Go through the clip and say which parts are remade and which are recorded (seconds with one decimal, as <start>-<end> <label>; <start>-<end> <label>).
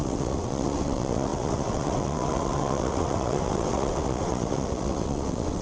0.0-5.6 remade